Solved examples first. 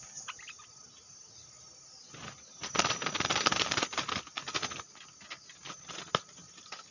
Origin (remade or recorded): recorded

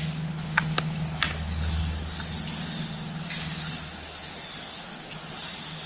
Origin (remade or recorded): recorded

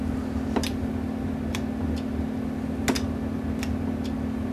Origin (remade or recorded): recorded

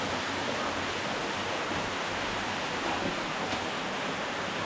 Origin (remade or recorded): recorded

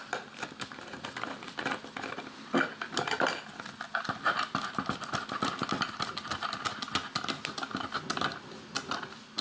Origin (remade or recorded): recorded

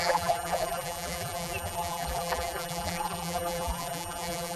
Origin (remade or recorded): remade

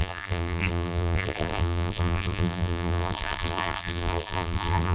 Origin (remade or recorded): remade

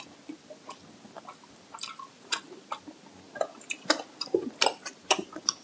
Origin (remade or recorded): recorded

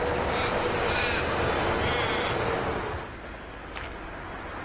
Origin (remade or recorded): recorded